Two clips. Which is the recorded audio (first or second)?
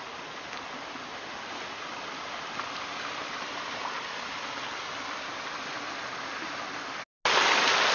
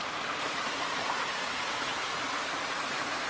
first